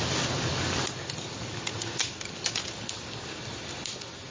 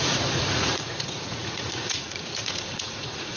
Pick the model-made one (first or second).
second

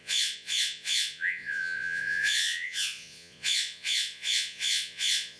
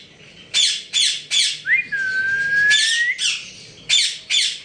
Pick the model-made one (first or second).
first